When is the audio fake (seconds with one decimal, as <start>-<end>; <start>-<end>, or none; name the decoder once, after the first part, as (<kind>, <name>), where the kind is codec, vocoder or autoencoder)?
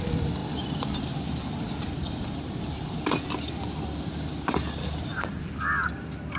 0.0-6.4 (vocoder, BigVGAN v2)